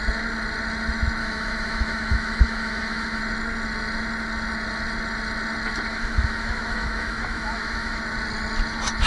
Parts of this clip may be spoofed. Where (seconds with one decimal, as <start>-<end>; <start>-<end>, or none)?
1.2-3.2; 5.9-8.0